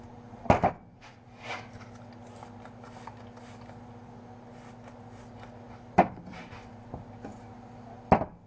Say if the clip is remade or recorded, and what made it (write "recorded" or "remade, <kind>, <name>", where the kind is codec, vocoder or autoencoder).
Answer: recorded